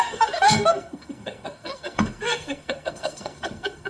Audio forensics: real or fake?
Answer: fake